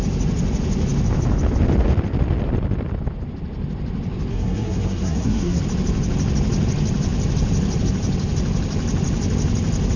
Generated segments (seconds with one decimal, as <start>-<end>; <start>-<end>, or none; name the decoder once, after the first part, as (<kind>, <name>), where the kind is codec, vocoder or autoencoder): 4.3-5.6 (codec, SNAC)

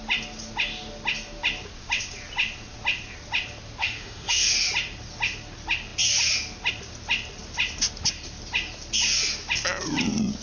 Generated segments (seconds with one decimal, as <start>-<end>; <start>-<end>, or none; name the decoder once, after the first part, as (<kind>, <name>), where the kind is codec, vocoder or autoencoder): 3.8-4.5 (autoencoder, DAC-VAE)

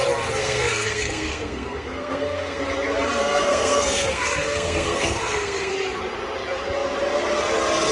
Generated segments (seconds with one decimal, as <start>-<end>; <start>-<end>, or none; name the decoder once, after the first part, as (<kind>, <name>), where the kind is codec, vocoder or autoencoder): 0.4-2.6 (codec, SNAC); 3.2-5.7

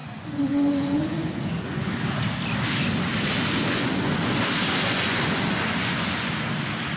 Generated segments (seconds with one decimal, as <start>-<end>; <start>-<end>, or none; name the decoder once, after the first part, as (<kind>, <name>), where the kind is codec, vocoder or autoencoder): 0.0-1.9 (vocoder, Vocos); 3.7-4.4; 4.9-6.3